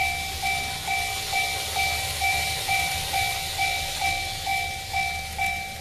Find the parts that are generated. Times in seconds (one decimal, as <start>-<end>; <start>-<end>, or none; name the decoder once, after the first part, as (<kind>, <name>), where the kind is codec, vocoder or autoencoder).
2.3-4.0 (vocoder, BigVGAN v2)